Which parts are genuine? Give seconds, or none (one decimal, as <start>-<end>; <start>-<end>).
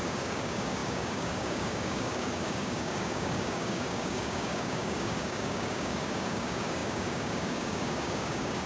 none